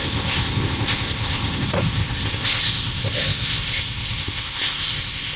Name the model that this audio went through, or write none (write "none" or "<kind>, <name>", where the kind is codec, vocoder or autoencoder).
codec, ZipCodec